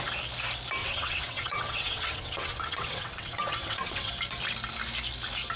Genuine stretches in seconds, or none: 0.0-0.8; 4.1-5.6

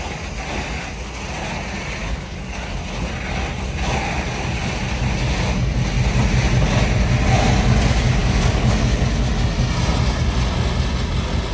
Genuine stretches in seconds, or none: 0.0-2.0; 2.7-8.2; 9.3-11.5

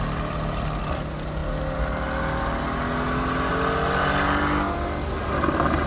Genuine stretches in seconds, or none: 0.0-5.9